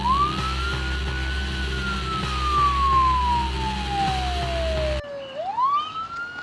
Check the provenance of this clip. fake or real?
real